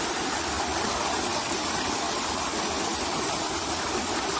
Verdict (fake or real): real